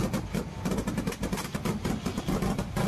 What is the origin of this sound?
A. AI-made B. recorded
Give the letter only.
B